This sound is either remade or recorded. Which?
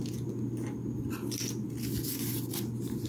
recorded